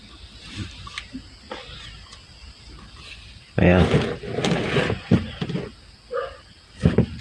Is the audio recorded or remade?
recorded